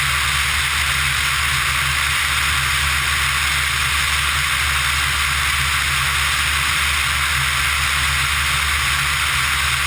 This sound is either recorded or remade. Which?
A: recorded